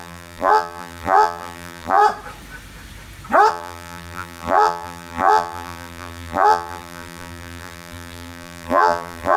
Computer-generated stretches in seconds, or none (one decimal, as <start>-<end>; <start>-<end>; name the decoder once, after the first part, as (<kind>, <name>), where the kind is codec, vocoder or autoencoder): 0.0-2.0 (vocoder, BigVGAN v2); 3.5-9.4